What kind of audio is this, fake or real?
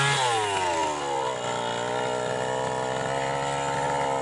real